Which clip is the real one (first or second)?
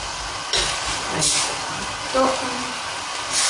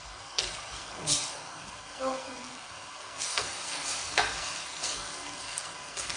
first